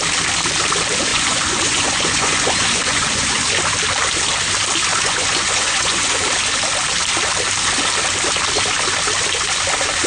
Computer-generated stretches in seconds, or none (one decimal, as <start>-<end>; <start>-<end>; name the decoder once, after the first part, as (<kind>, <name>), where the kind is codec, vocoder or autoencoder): 1.1-3.6 (vocoder, Vocos); 4.9-6.2